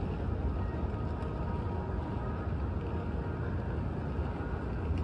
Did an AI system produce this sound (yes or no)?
no